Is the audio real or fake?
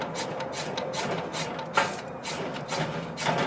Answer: real